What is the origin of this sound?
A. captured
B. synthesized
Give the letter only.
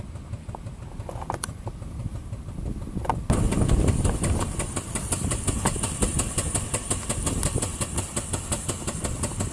A